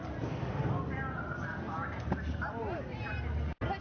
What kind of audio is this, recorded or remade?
recorded